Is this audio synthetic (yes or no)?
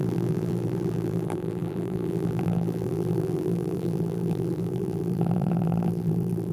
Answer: yes